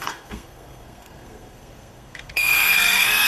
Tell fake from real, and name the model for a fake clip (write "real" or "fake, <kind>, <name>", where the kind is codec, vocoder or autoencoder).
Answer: fake, codec, SNAC